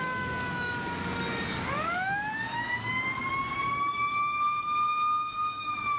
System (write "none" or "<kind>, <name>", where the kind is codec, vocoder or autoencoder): codec, DAC